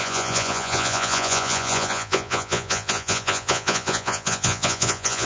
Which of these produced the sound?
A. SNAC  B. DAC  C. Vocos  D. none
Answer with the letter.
C